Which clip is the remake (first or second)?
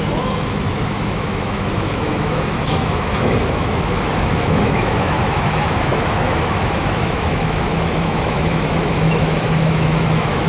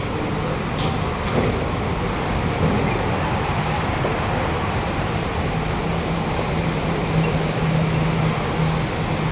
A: first